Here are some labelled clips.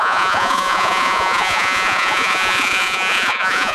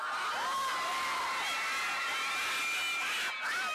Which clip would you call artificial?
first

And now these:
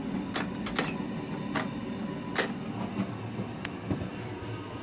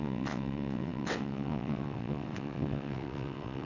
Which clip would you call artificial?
second